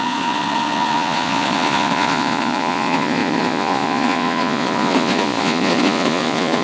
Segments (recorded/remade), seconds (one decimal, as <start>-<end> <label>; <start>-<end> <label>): 0.0-6.6 remade